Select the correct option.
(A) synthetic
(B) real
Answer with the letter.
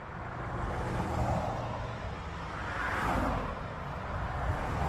B